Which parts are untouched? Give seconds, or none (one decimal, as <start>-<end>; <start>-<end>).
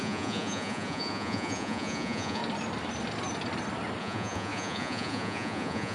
2.4-4.0